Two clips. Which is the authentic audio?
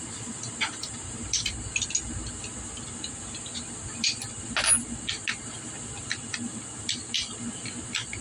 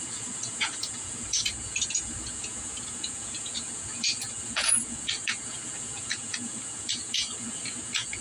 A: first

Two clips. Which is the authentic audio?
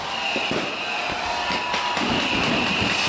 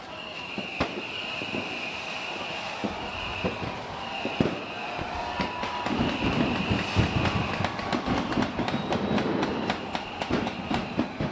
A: first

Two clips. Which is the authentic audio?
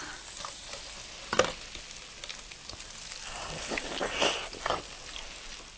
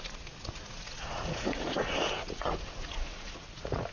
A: first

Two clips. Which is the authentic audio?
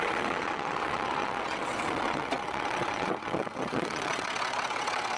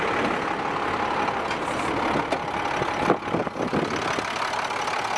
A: second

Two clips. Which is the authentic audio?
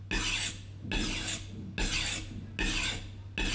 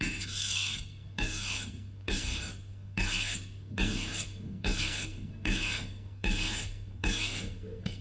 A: first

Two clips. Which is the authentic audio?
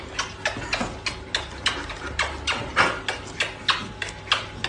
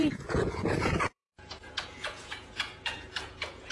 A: first